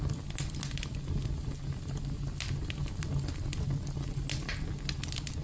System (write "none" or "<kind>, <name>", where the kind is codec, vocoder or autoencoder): none